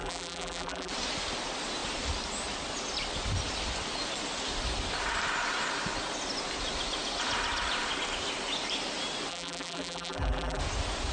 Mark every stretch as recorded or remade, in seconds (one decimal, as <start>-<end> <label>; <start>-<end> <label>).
0.0-0.9 remade; 0.9-9.3 recorded; 9.3-10.6 remade; 10.6-11.1 recorded